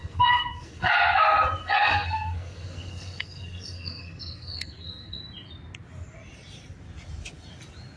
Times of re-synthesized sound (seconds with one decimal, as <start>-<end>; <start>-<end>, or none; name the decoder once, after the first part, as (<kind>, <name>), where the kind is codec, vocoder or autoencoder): 0.0-0.9 (codec, SNAC); 1.6-5.2